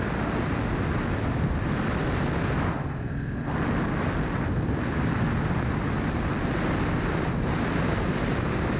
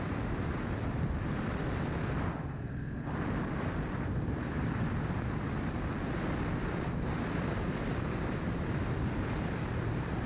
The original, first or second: first